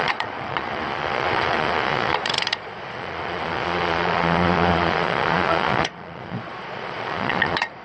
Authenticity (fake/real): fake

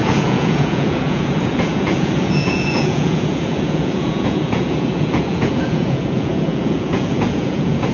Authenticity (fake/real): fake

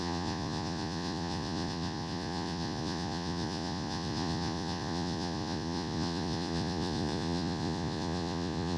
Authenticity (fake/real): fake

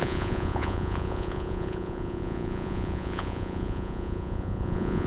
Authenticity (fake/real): fake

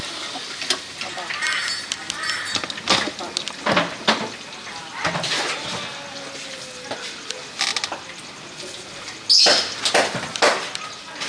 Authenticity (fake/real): real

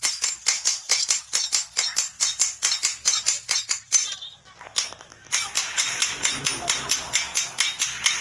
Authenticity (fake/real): real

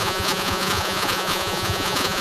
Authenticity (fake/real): fake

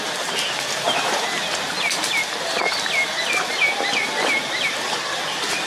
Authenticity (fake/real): real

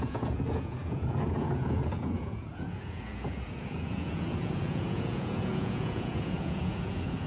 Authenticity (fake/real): fake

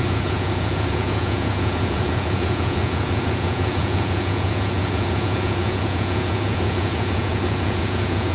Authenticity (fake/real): fake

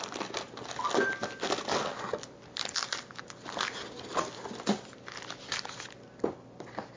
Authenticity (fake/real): real